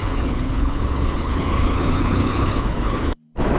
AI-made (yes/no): yes